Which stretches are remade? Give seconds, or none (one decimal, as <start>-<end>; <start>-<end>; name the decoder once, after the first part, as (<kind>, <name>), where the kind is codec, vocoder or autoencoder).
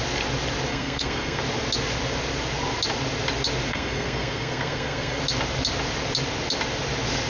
0.7-1.4 (codec, SNAC); 3.7-5.2